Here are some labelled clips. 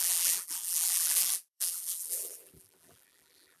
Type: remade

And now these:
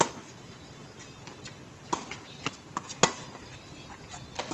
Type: recorded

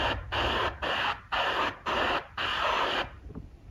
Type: recorded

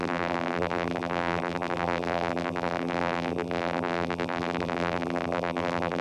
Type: remade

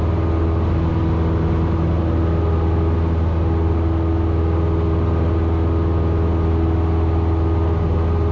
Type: recorded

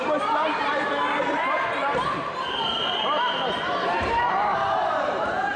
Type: remade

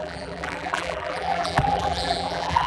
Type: remade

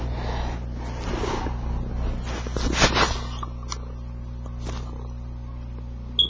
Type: recorded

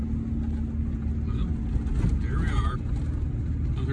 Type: recorded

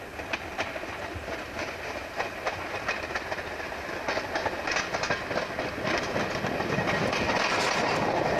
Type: recorded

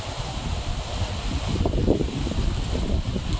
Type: recorded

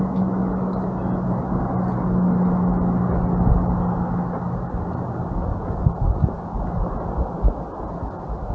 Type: recorded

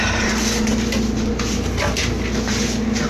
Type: recorded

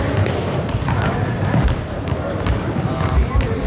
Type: remade